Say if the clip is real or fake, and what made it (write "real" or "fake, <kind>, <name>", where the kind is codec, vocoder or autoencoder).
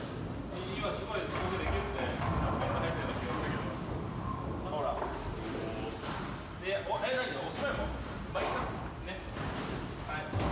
real